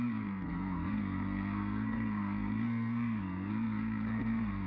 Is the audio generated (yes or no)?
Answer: yes